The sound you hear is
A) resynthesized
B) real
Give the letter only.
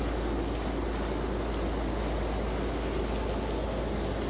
B